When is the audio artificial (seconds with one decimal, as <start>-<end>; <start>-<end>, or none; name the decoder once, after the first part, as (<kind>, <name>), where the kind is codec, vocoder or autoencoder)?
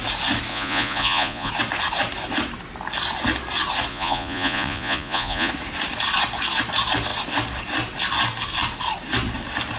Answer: 0.5-1.5 (vocoder, Vocos); 3.9-5.5